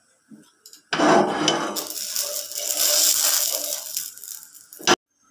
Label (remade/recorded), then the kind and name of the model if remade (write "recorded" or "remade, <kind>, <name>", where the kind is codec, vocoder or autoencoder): recorded